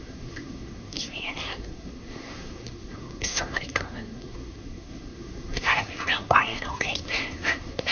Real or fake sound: fake